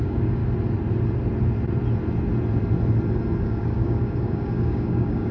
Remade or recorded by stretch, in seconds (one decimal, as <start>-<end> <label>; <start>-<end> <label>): 0.0-0.4 remade; 0.4-3.4 recorded; 3.4-5.3 remade